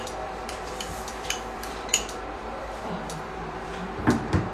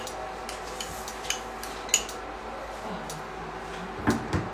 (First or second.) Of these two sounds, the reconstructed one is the first